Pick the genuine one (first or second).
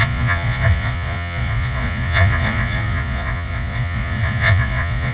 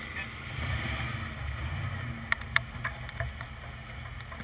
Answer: second